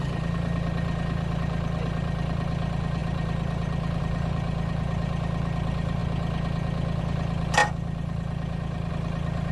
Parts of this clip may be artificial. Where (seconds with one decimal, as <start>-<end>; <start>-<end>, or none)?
0.0-6.0; 7.0-9.5